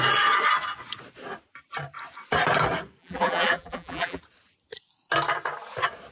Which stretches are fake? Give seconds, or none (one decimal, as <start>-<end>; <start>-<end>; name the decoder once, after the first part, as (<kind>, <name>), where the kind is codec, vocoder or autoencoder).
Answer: 3.0-4.2 (vocoder, BigVGAN v2)